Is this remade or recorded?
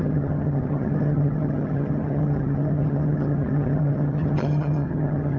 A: remade